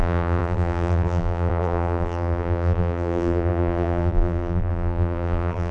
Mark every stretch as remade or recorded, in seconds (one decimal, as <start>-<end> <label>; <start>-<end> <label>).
0.0-5.7 remade